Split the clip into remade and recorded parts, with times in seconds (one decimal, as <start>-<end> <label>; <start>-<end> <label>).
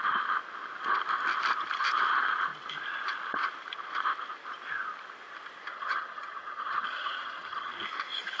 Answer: 0.0-5.7 recorded; 5.7-7.7 remade; 7.7-8.4 recorded